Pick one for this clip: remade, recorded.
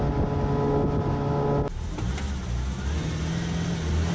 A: recorded